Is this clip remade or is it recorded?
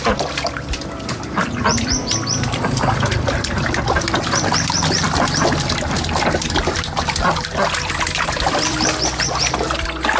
remade